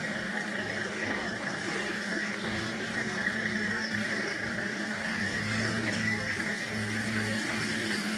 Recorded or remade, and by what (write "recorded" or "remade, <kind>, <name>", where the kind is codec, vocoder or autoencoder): remade, codec, DAC